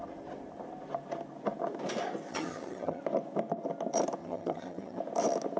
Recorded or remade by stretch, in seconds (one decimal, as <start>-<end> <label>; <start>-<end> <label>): 0.0-2.3 recorded; 2.3-3.0 remade; 3.0-4.2 recorded; 4.2-5.0 remade; 5.0-5.6 recorded